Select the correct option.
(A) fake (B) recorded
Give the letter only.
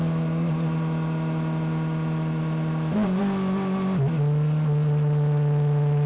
B